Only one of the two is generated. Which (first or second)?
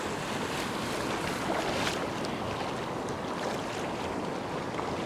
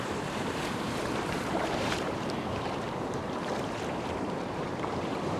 second